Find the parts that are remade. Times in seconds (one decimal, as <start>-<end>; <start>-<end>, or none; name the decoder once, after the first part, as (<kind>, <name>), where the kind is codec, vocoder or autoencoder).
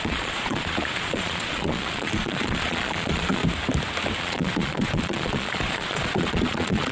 0.0-3.4 (vocoder, Vocos); 4.2-6.9